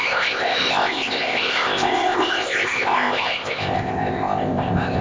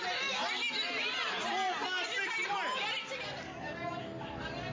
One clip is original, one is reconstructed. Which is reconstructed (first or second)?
first